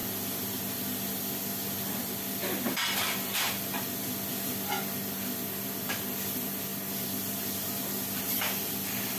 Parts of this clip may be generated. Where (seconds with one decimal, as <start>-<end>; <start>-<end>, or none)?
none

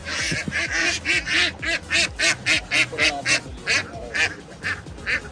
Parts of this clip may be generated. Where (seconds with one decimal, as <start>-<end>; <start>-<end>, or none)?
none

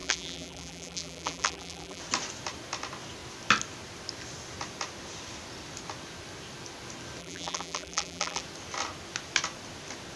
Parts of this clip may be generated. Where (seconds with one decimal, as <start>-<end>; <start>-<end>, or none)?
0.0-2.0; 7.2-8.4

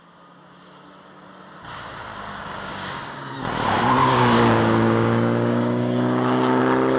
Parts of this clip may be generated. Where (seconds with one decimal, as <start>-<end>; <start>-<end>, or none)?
2.3-3.3; 4.0-6.6

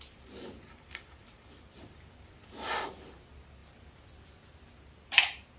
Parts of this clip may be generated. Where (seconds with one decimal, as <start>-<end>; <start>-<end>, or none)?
1.2-2.1